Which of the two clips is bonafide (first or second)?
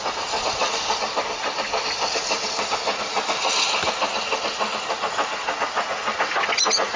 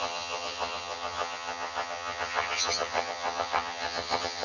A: first